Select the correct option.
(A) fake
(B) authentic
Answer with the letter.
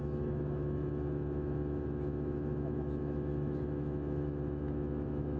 A